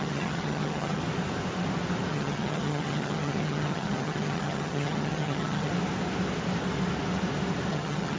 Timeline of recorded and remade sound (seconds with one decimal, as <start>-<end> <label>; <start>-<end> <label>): 0.0-1.0 remade; 1.0-2.1 recorded; 2.1-5.7 remade; 5.7-7.7 recorded; 7.7-8.2 remade